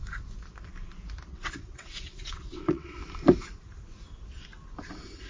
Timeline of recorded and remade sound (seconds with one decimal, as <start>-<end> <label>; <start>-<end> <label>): 0.0-1.3 recorded; 1.3-3.0 remade; 3.0-5.3 recorded